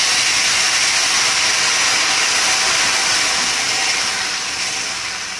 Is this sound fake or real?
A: real